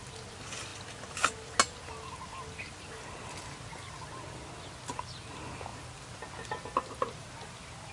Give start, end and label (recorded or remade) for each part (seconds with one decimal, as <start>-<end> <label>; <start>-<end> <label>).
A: 0.0-7.9 recorded